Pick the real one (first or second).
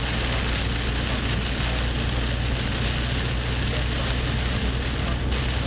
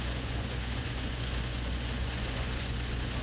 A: first